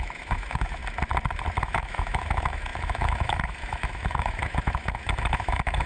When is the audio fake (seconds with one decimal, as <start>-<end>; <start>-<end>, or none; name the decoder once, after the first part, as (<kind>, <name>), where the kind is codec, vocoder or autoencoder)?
0.0-0.8 (autoencoder, DAC-VAE); 1.6-5.9